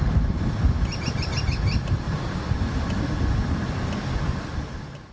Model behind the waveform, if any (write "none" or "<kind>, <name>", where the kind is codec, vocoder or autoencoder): none